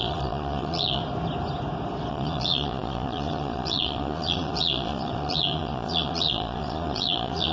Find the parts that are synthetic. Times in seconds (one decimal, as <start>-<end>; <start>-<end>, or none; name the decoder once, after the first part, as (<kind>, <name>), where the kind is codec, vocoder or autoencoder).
0.0-1.0 (vocoder, Vocos); 2.1-7.5